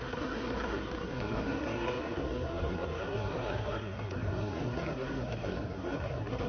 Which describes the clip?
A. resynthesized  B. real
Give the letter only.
A